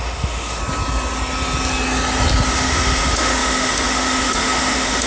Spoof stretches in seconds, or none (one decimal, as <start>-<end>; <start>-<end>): 0.0-0.6; 2.5-5.1